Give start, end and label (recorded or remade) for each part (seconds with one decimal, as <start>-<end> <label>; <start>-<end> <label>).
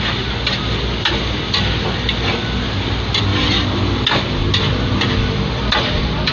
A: 0.0-6.3 recorded